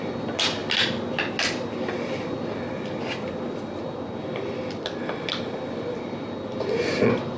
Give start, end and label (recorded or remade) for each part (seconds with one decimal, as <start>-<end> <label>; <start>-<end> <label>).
0.0-7.4 recorded

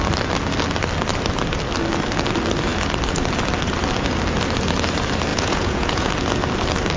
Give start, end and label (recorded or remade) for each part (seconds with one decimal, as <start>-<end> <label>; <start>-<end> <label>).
0.0-5.3 recorded; 5.3-6.1 remade; 6.1-7.0 recorded

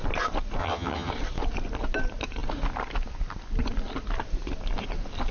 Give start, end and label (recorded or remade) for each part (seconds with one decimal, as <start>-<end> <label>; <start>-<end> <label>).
0.0-0.6 recorded; 0.6-1.1 remade; 1.1-5.3 recorded

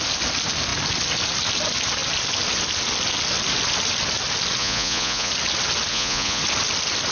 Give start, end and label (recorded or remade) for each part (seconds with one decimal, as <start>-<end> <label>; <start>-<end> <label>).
0.0-4.6 recorded; 4.6-5.3 remade; 5.3-5.9 recorded; 5.9-6.4 remade; 6.4-7.1 recorded

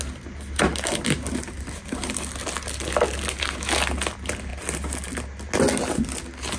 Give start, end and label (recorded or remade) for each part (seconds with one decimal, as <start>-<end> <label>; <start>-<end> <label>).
0.0-6.6 recorded

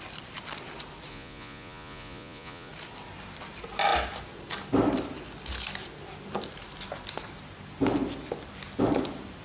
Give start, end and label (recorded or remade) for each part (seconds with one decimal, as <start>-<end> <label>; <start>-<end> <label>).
0.0-1.1 recorded; 1.1-2.7 remade; 2.7-9.4 recorded

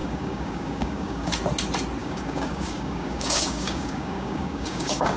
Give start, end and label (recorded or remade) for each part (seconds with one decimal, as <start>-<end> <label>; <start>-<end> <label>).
0.0-1.3 remade; 1.3-2.0 recorded; 2.0-5.2 remade